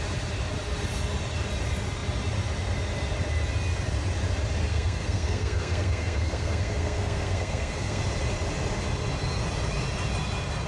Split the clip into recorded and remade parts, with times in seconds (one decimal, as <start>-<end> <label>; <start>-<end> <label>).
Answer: 0.0-4.7 recorded; 4.7-8.0 remade; 8.0-10.7 recorded